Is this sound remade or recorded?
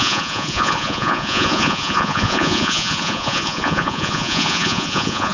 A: remade